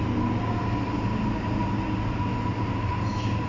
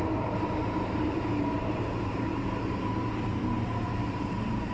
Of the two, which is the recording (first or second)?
first